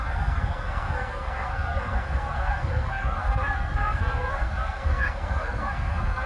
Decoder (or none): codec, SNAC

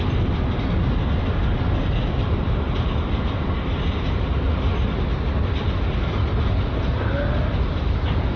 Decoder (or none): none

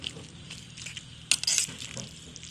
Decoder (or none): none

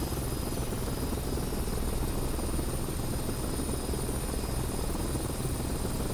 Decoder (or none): none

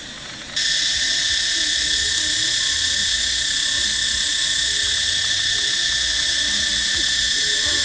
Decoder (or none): none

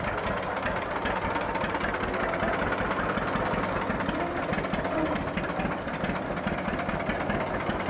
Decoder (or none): none